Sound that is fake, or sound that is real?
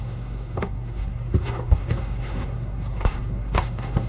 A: fake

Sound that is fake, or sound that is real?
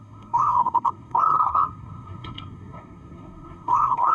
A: fake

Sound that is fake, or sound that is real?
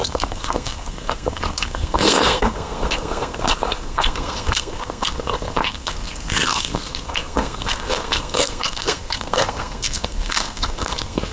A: fake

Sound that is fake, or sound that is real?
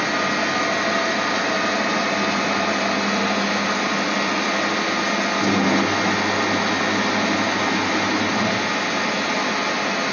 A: real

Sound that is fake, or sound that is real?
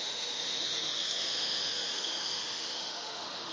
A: fake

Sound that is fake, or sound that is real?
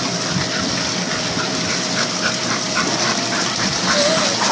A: real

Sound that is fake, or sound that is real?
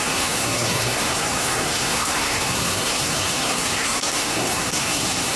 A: fake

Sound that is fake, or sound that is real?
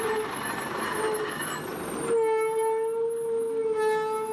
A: real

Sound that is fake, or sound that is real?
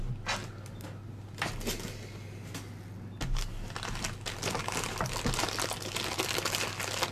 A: real